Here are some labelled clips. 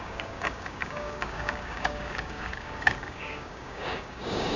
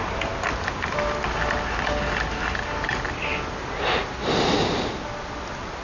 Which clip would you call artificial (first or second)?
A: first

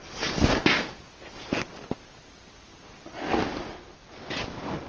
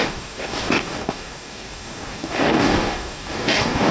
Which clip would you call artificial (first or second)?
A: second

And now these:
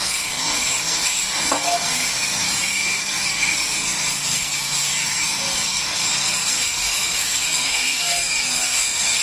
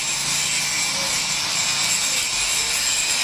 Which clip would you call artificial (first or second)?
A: first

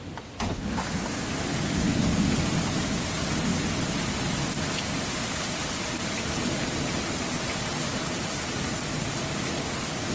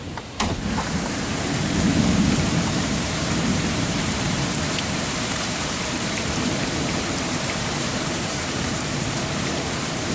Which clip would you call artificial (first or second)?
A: second